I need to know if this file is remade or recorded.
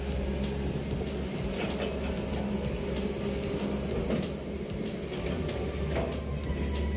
recorded